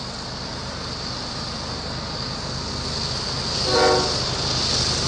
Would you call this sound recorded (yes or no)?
yes